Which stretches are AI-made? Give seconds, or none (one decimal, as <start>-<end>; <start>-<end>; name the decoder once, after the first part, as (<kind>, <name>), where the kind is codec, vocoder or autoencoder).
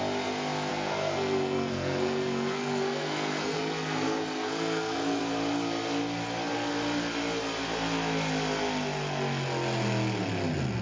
0.7-5.2 (codec, SNAC)